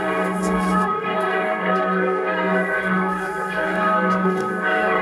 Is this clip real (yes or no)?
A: no